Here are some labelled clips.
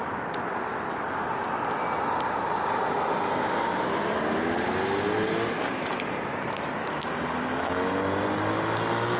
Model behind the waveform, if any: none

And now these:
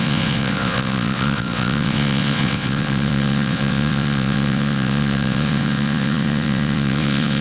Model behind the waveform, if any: vocoder, WaveNeXt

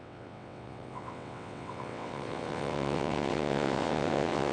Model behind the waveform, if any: vocoder, WaveNeXt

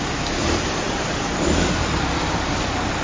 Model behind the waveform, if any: vocoder, BigVGAN v2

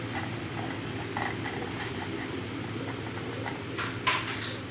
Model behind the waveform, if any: none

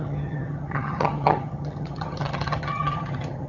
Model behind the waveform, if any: vocoder, HiFi-GAN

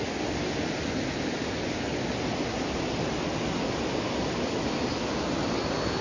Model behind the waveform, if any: none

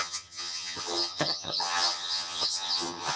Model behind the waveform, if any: vocoder, HiFi-GAN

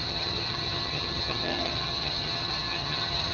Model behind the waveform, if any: vocoder, HiFi-GAN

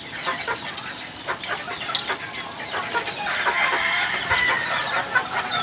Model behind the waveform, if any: none